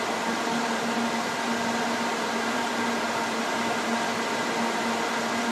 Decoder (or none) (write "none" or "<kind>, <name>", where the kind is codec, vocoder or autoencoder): none